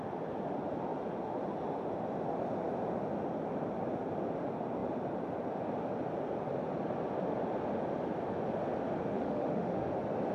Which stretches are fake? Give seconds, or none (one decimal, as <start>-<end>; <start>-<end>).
9.1-9.9

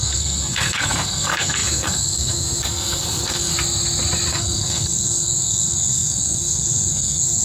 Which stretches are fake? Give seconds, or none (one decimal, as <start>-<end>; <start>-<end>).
0.0-3.5; 4.3-7.4

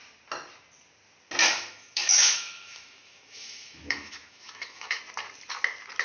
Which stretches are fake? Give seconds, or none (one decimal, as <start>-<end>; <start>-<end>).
1.4-5.0

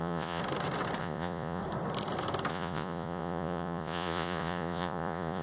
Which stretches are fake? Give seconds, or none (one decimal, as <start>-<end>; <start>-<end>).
0.0-0.4; 1.0-1.6; 2.5-5.4

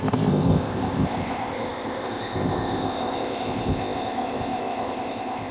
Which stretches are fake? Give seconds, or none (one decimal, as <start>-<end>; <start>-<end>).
0.0-5.5

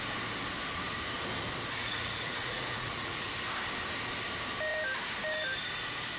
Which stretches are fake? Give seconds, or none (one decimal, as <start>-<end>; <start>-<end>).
1.8-3.3

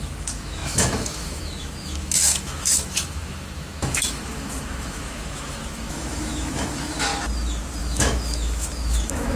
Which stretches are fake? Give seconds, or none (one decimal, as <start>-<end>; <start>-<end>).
0.0-7.1; 7.8-9.4